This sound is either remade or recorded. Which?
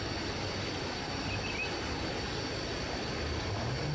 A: recorded